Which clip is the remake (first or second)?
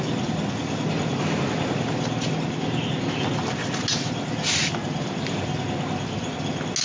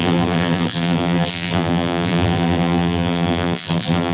second